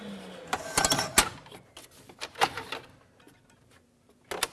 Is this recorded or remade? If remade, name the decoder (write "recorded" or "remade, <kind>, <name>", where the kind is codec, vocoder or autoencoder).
recorded